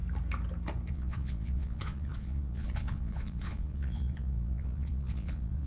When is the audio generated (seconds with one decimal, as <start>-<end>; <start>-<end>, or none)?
0.9-5.7